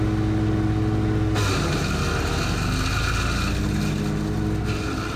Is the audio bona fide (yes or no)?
yes